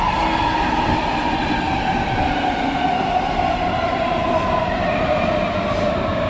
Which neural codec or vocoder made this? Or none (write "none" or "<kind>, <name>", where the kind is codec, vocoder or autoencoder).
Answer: none